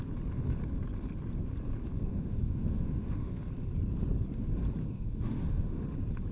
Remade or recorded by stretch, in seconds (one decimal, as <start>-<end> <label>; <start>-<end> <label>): 0.0-2.1 recorded; 2.1-3.4 remade; 3.4-4.8 recorded; 4.8-5.8 remade; 5.8-6.3 recorded